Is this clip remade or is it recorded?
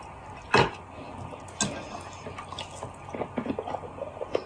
recorded